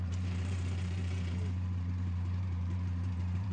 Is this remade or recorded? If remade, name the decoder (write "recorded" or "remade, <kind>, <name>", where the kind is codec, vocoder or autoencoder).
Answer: remade, vocoder, BigVGAN v2